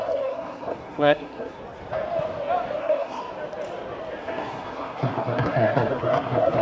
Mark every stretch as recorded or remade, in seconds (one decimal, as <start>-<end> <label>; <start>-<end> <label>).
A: 0.0-1.6 remade; 1.6-2.8 recorded; 2.8-3.2 remade; 3.2-4.2 recorded; 4.2-6.6 remade